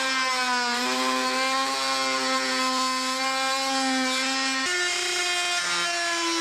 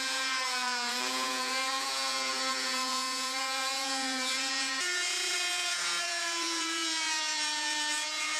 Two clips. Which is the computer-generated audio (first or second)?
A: second